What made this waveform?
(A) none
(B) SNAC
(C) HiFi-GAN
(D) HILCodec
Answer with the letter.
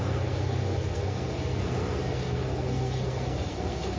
B